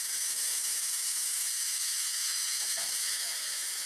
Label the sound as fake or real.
fake